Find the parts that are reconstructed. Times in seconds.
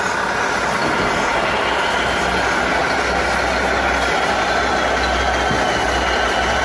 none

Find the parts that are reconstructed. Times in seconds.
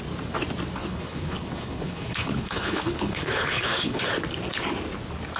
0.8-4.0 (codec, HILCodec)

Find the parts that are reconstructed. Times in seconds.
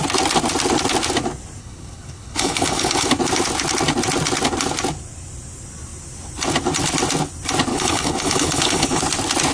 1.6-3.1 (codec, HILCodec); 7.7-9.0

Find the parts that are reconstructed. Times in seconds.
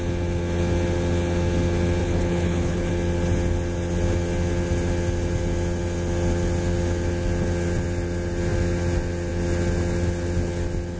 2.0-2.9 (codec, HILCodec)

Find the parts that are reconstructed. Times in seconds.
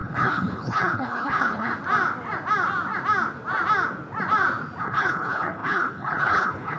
0.0-1.7 (codec, HILCodec); 4.8-6.8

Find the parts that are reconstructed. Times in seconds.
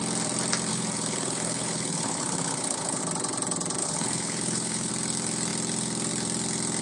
0.7-3.0 (codec, HILCodec); 3.8-4.9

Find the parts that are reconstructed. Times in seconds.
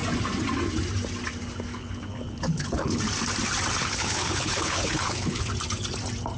1.7-3.0 (codec, HILCodec); 3.8-5.5